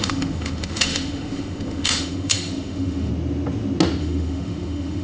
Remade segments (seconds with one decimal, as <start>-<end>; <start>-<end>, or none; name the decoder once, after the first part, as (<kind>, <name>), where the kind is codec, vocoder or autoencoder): 0.0-3.1 (autoencoder, DAC-VAE); 4.0-5.0